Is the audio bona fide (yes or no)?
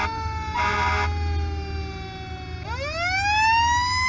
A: yes